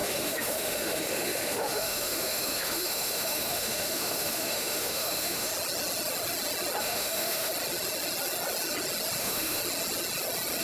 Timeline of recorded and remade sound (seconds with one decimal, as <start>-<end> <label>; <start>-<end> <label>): 0.0-5.5 remade; 5.5-6.8 recorded; 6.8-7.5 remade; 7.5-9.2 recorded; 9.2-9.6 remade; 9.6-10.6 recorded